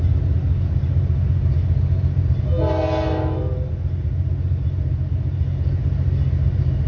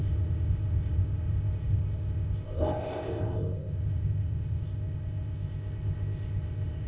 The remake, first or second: second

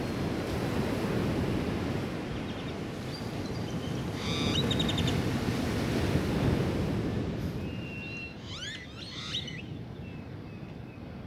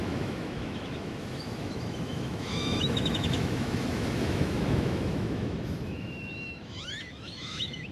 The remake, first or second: second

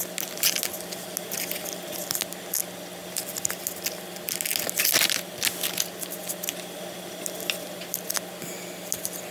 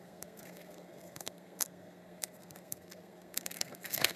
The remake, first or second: second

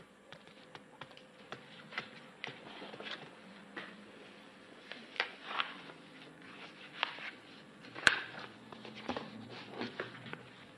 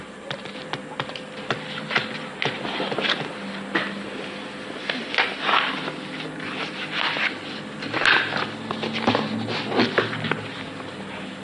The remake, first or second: first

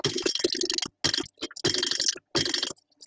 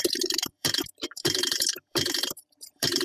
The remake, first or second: second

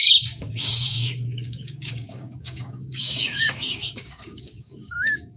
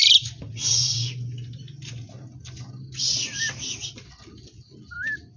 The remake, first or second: first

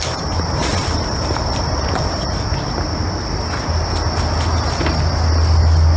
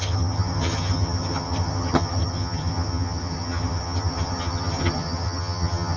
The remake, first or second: second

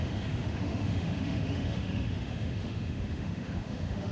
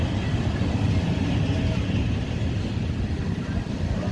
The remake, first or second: first